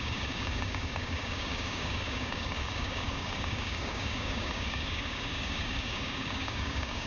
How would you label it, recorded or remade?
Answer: remade